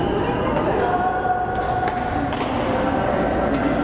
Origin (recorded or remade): recorded